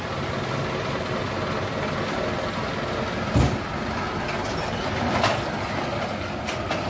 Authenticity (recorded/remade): recorded